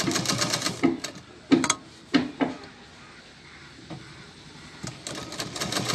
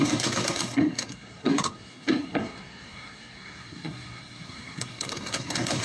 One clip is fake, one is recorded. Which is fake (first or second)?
second